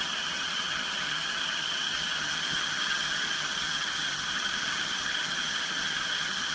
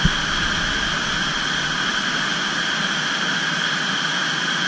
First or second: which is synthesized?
first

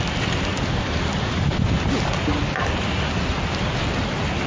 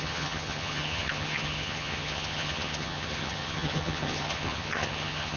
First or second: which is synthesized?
second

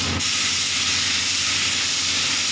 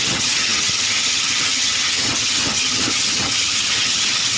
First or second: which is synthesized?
second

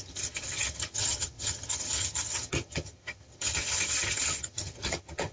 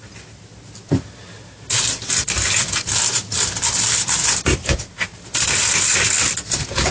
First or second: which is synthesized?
first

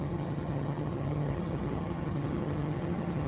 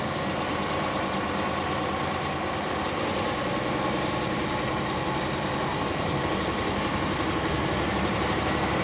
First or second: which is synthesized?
first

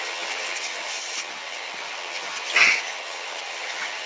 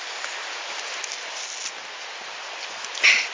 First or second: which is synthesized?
first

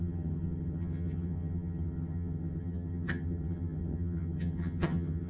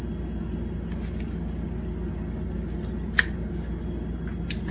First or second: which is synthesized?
first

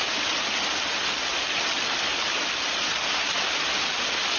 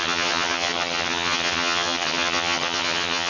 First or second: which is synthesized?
second